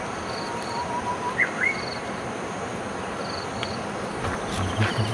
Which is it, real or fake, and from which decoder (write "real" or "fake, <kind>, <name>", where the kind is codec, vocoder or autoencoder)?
real